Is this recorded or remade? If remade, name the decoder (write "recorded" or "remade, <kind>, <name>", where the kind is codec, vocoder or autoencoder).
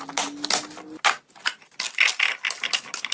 recorded